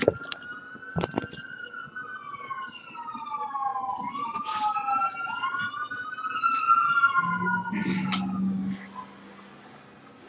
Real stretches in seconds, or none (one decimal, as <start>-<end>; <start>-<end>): 0.0-10.3

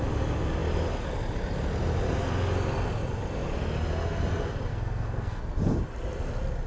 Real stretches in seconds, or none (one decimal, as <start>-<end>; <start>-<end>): 0.0-4.7; 5.4-6.7

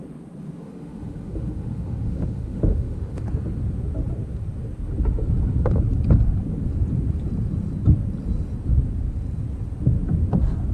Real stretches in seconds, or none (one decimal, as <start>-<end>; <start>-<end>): 0.0-0.6; 3.2-10.7

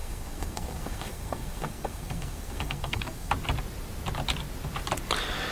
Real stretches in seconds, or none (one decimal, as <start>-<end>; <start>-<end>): 3.3-5.5

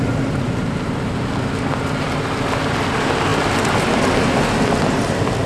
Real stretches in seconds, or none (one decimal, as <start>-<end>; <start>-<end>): 0.0-5.5